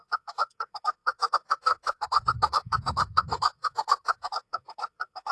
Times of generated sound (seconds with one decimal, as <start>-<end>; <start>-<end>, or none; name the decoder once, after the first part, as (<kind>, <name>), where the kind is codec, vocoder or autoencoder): 0.0-5.3 (codec, SNAC)

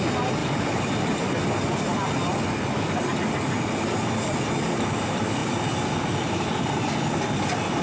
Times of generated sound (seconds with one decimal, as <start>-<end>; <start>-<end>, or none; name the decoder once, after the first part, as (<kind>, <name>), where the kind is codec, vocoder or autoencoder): none